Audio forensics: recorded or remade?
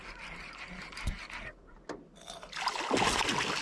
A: recorded